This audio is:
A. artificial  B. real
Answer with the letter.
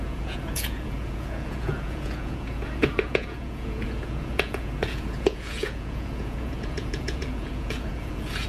A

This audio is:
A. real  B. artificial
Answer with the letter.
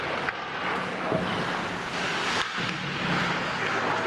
A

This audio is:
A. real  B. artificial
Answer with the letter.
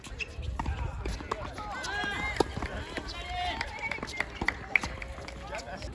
A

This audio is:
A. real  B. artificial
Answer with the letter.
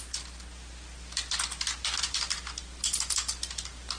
A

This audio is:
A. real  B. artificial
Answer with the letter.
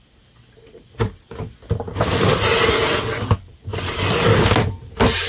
A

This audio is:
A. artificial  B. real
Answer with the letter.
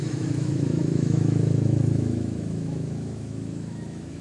A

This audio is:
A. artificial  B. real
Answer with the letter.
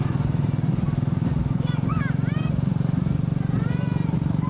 A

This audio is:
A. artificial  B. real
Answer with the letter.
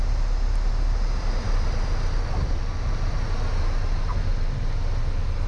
B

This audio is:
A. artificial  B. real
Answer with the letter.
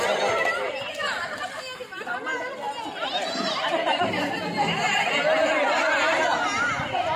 B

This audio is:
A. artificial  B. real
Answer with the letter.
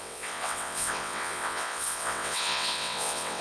A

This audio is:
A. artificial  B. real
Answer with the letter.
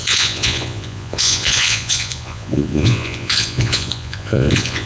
A